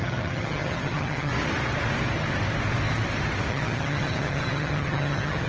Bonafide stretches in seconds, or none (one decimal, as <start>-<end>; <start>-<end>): 1.3-3.5